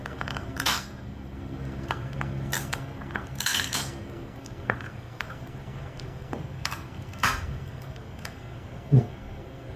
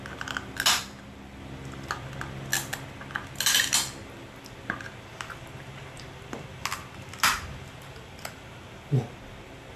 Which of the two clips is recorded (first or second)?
second